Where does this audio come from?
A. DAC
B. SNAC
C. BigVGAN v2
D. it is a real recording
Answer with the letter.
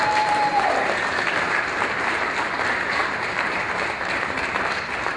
C